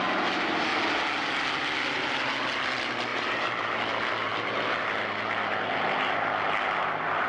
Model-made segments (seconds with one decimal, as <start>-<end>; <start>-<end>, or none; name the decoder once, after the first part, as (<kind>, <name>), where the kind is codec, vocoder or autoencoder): 3.1-3.8 (vocoder, BigVGAN v2)